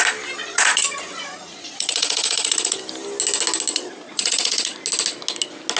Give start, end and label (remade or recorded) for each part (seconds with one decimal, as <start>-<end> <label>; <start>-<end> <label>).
0.0-0.4 recorded; 0.4-2.8 remade; 2.8-3.7 recorded; 3.7-4.8 remade; 4.8-5.8 recorded